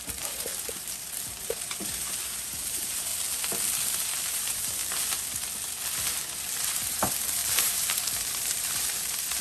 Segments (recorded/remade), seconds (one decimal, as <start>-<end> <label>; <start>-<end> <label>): 0.0-0.5 remade; 0.5-1.4 recorded; 1.4-3.1 remade; 3.1-4.2 recorded; 4.2-4.8 remade; 4.8-6.6 recorded; 6.6-9.4 remade